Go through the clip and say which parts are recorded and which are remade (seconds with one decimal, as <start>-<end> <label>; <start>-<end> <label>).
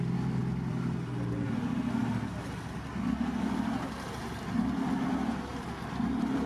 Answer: 0.0-0.4 recorded; 0.4-1.1 remade; 1.1-5.5 recorded; 5.5-6.5 remade